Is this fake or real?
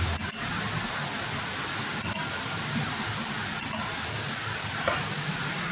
real